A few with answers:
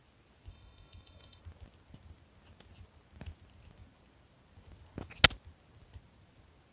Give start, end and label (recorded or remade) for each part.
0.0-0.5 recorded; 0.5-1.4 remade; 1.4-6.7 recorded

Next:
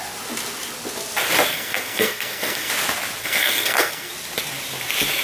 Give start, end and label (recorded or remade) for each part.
0.0-1.5 recorded; 1.5-2.7 remade; 2.7-3.2 recorded; 3.2-4.1 remade; 4.1-5.2 recorded

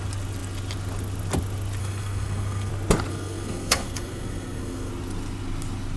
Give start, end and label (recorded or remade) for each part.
0.0-1.8 recorded; 1.8-2.7 remade; 2.7-3.1 recorded; 3.1-4.9 remade; 4.9-6.0 recorded

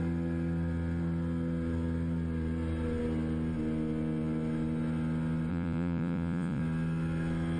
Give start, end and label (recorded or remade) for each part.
0.0-5.5 recorded; 5.5-6.6 remade; 6.6-7.6 recorded

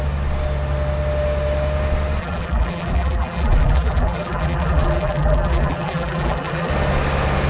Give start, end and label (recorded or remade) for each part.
0.0-2.2 recorded; 2.2-6.7 remade; 6.7-7.5 recorded

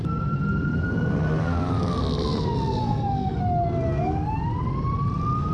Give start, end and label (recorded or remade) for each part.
0.0-2.8 recorded; 2.8-3.4 remade; 3.4-5.5 recorded

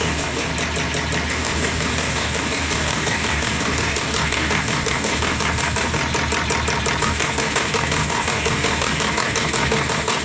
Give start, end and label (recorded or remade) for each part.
0.0-0.5 remade; 0.5-1.3 recorded; 1.3-6.0 remade; 6.0-7.0 recorded; 7.0-10.2 remade